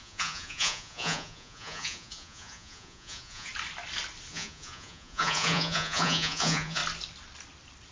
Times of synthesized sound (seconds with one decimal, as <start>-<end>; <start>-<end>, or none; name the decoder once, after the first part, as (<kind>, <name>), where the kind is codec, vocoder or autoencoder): 0.0-3.5 (vocoder, Vocos); 4.3-6.8